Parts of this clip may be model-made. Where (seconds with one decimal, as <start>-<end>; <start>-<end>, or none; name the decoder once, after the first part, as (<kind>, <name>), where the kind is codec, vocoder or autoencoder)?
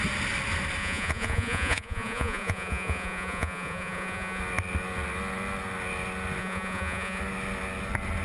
0.8-4.4 (vocoder, Vocos); 6.4-7.2